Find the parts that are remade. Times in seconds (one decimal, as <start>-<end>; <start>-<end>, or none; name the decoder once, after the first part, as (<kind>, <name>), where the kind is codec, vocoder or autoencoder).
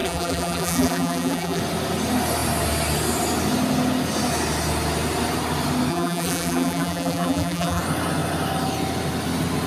0.0-1.6 (vocoder, BigVGAN v2); 5.9-7.8